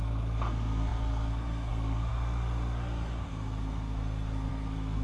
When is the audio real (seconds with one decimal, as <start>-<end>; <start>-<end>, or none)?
none

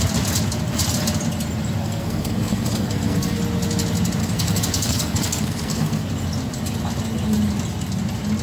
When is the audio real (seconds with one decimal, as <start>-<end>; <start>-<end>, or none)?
0.0-1.8; 3.4-4.2; 6.1-8.4

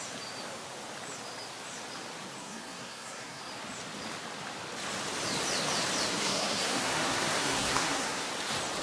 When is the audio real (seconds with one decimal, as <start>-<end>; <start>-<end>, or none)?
0.0-2.4; 3.4-6.1; 8.3-8.8